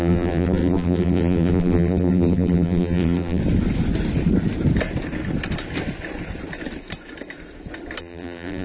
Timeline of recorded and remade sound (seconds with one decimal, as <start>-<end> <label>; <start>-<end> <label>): 0.0-3.4 remade; 3.4-8.0 recorded; 8.0-8.6 remade